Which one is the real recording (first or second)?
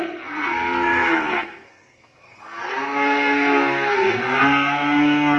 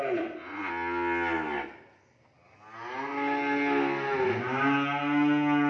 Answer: second